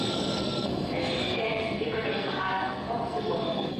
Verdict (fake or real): fake